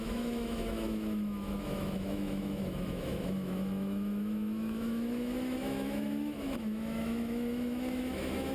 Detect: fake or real fake